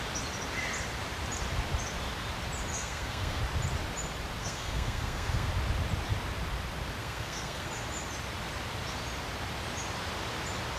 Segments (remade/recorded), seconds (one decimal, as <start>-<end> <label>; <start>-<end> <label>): 0.0-2.7 recorded; 2.7-3.4 remade; 3.4-4.4 recorded; 4.4-5.5 remade; 5.5-7.0 recorded; 7.0-7.7 remade; 7.7-10.8 recorded